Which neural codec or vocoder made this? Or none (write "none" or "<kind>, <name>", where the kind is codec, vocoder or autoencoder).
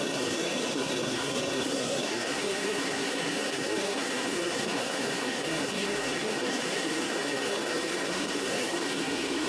codec, SNAC